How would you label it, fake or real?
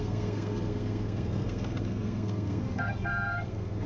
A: fake